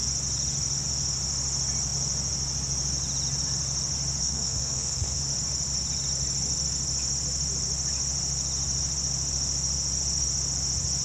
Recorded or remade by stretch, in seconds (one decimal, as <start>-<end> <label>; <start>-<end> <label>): 0.0-4.2 recorded; 4.2-5.2 remade; 5.2-11.0 recorded